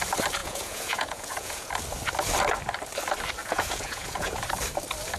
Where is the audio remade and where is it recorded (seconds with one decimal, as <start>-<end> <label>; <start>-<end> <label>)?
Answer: 0.0-0.4 recorded; 0.4-1.7 remade; 1.7-3.4 recorded; 3.4-4.4 remade; 4.4-5.2 recorded